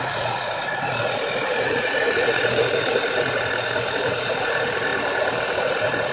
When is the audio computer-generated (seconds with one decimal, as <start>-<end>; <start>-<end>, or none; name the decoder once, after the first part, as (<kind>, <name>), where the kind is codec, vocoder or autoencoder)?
0.0-4.9 (vocoder, Vocos); 5.6-6.1